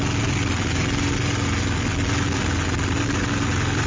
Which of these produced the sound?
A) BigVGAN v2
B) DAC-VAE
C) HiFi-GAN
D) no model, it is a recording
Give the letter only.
D